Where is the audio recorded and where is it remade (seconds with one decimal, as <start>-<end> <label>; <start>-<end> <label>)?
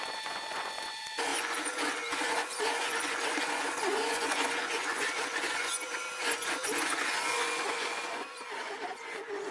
0.0-9.5 remade